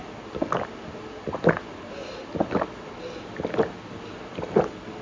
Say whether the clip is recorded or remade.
recorded